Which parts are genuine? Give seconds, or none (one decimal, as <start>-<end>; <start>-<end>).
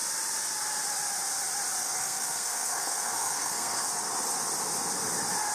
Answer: 0.0-1.8; 3.9-5.5